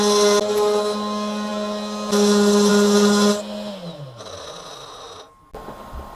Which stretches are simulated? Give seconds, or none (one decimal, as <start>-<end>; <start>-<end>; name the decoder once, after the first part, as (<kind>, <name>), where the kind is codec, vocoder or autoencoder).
none